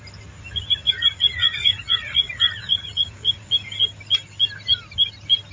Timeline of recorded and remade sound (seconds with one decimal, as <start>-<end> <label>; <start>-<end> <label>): 0.0-0.8 recorded; 0.8-3.5 remade; 3.5-5.5 recorded

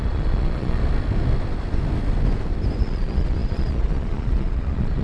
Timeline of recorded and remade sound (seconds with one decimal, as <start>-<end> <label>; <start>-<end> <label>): 0.0-0.8 remade; 0.8-2.8 recorded; 2.8-5.0 remade

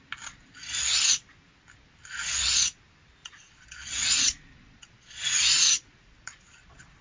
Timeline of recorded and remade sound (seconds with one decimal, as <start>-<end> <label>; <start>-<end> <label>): 0.0-3.2 recorded; 3.2-7.0 remade

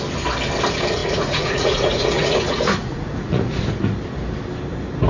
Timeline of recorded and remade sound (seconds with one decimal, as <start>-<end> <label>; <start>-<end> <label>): 0.0-1.0 recorded; 1.0-3.6 remade; 3.6-5.1 recorded